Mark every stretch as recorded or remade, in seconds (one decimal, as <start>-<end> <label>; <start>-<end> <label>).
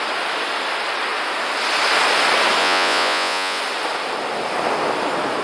0.0-2.6 recorded; 2.6-3.6 remade; 3.6-5.4 recorded